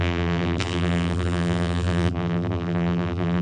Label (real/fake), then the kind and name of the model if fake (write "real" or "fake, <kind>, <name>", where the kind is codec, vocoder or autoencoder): fake, vocoder, BigVGAN v2